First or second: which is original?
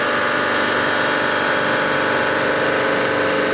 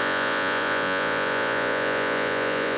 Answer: first